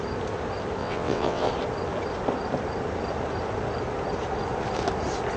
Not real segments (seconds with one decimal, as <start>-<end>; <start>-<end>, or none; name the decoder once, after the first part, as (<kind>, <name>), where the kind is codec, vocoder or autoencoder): 0.8-1.5 (vocoder, WaveNeXt)